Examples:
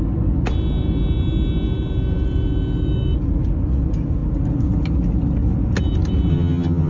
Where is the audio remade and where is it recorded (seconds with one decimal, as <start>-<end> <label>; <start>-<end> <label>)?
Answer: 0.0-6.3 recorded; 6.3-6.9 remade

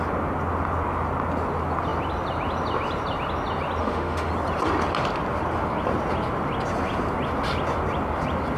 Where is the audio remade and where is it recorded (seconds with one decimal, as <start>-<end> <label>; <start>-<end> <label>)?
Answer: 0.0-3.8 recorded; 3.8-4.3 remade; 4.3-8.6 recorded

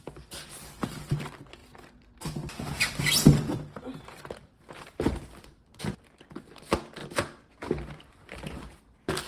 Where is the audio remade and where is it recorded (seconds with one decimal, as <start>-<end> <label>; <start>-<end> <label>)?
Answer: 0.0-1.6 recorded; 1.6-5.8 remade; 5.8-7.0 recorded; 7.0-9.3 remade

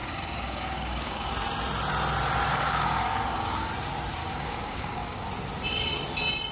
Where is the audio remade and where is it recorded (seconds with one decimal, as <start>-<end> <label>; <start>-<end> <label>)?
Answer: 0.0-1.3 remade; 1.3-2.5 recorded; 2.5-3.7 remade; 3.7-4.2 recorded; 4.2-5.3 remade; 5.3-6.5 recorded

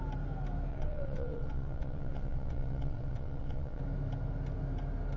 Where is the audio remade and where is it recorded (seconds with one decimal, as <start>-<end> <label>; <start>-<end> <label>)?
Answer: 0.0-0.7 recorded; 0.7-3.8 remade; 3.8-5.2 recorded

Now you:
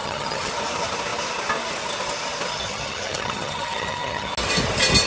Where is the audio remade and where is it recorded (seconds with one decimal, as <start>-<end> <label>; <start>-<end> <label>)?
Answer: 0.0-0.5 remade; 0.5-2.5 recorded; 2.5-4.3 remade; 4.3-5.1 recorded

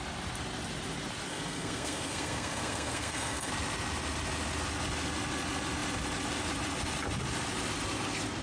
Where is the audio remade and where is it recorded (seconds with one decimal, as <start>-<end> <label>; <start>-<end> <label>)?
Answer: 0.0-1.3 recorded; 1.3-3.5 remade; 3.5-8.4 recorded